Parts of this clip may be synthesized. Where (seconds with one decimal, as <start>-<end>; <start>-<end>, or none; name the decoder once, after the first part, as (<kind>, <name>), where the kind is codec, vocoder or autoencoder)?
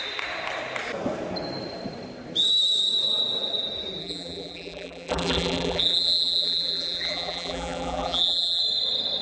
4.0-8.6 (vocoder, BigVGAN v2)